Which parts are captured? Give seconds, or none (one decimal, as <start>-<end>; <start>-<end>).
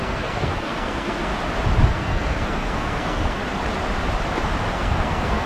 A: 1.3-1.9; 3.4-4.7